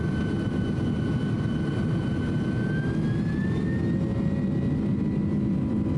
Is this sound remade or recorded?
recorded